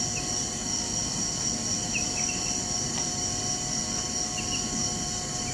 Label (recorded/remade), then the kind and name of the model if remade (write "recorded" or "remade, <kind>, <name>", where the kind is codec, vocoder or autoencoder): recorded